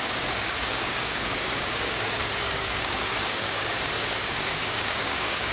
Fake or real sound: fake